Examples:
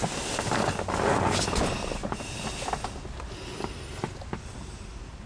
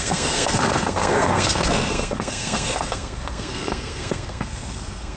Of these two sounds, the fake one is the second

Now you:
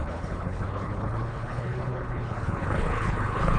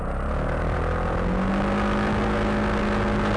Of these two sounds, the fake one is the first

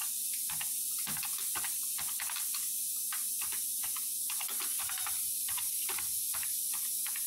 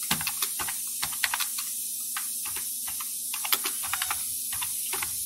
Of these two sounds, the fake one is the first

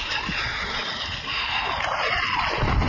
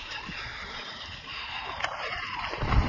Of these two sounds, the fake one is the second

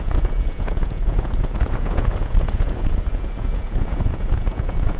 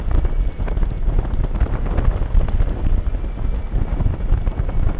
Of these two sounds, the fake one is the first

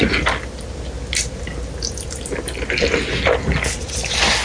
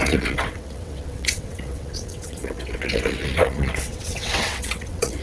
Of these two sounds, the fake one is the second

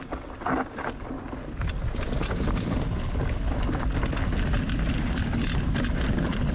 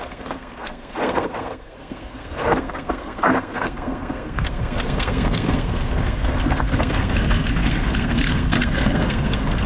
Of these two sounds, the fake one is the second